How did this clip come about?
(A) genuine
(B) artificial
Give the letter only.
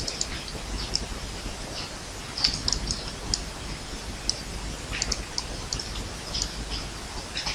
A